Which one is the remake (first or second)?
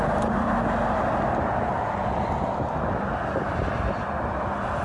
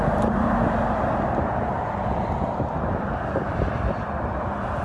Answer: second